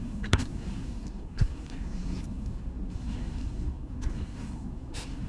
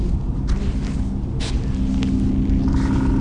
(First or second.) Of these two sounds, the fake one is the first